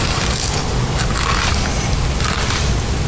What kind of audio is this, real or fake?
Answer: real